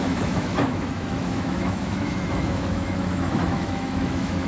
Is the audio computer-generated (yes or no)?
yes